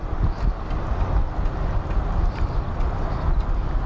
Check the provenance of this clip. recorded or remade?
recorded